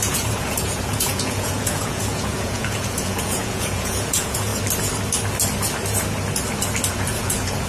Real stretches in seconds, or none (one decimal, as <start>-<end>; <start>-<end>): 4.5-6.9